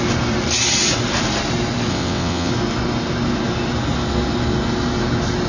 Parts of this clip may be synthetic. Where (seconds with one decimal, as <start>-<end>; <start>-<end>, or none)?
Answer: 1.9-2.5